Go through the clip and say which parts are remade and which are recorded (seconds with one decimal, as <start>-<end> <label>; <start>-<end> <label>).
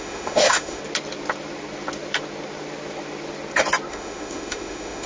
0.0-0.8 remade; 0.8-3.9 recorded; 3.9-5.1 remade